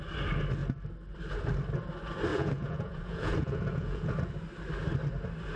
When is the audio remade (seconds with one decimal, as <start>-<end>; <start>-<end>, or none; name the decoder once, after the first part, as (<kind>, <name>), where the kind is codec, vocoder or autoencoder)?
2.3-4.3 (vocoder, Vocos)